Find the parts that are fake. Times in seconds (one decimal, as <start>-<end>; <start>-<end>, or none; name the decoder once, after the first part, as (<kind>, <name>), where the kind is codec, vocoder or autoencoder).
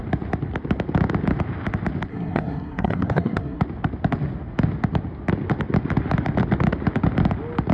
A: 2.1-3.6 (codec, SNAC)